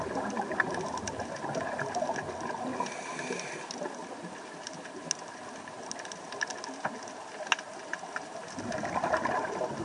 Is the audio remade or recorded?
recorded